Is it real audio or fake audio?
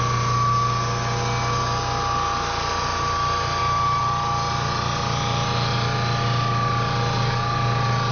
real